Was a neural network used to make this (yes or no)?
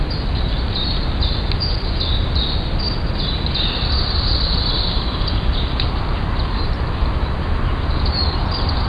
no